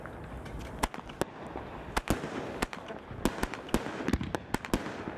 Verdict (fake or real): real